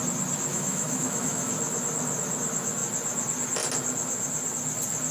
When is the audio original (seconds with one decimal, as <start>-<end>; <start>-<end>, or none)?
0.0-0.5; 1.5-5.1